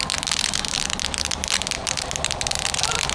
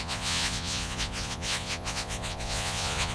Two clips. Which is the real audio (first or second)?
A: first